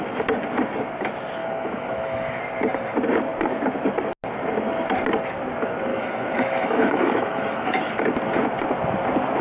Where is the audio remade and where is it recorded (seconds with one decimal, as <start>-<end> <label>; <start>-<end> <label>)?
0.0-1.4 recorded; 1.4-2.4 remade; 2.4-5.9 recorded; 5.9-7.9 remade; 7.9-9.4 recorded